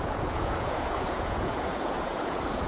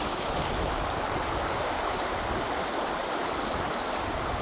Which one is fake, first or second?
first